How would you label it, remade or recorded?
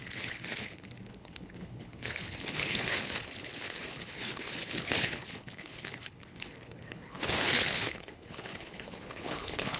remade